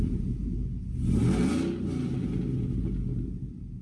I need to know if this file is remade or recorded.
recorded